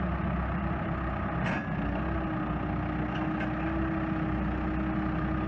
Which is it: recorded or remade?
recorded